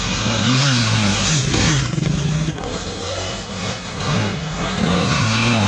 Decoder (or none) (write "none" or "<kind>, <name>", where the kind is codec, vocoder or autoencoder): codec, SNAC